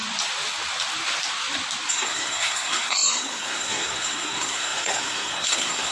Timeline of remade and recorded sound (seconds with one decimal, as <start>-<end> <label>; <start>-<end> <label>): 0.0-1.9 recorded; 1.9-5.9 remade